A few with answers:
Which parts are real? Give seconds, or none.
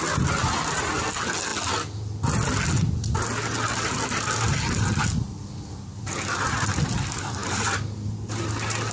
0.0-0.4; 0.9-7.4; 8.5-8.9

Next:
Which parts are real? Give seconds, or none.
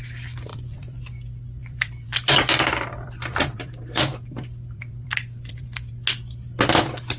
0.0-0.5; 1.0-1.6; 5.9-7.2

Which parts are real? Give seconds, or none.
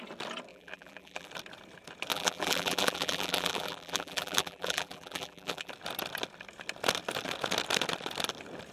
0.0-0.5; 1.3-2.1; 5.7-8.7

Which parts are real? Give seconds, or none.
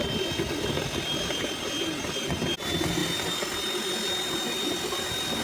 0.0-5.4